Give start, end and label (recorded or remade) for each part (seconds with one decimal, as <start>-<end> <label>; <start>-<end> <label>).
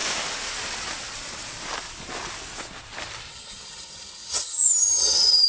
0.0-3.3 recorded; 3.3-5.5 remade